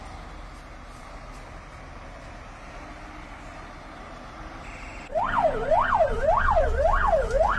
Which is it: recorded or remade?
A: recorded